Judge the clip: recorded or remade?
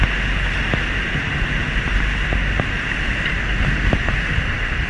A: recorded